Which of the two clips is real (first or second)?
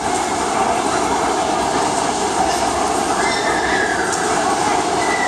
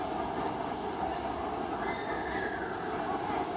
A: second